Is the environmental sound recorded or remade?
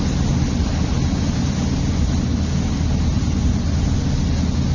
recorded